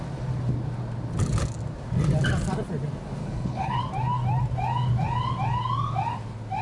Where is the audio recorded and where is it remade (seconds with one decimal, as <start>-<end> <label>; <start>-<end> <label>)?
0.0-3.2 recorded; 3.2-3.8 remade; 3.8-6.6 recorded